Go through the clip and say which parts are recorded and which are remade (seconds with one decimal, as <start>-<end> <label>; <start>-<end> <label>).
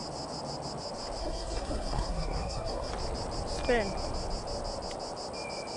0.0-1.2 recorded; 1.2-2.9 remade; 2.9-5.8 recorded